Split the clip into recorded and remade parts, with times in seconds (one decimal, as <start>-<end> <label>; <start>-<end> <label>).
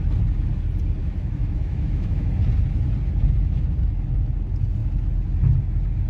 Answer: 0.0-1.0 recorded; 1.0-2.3 remade; 2.3-6.1 recorded